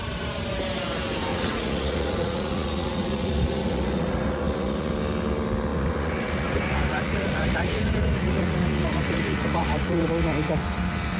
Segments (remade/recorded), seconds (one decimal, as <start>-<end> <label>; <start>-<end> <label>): 0.0-1.3 recorded; 1.3-4.9 remade; 4.9-5.7 recorded; 5.7-10.1 remade; 10.1-11.2 recorded